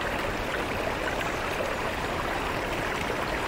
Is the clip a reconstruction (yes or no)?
no